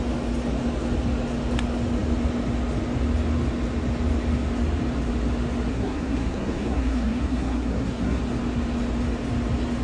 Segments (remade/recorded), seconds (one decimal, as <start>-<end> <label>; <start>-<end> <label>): 0.0-5.7 recorded; 5.7-8.2 remade; 8.2-9.8 recorded